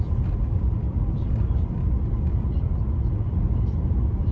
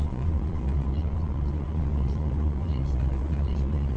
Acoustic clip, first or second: first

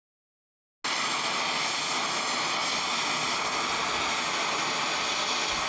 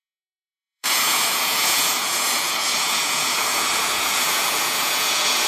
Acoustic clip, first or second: first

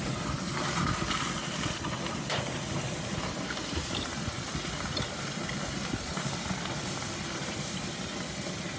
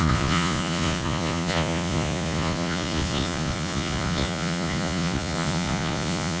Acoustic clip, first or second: first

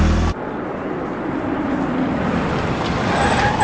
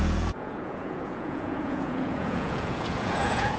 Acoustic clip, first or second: first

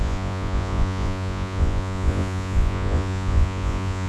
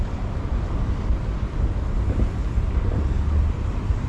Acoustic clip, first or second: second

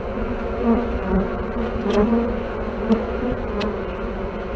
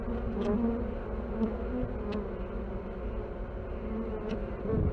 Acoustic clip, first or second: second